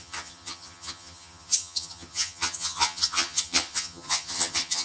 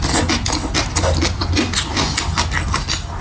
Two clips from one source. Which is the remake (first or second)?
first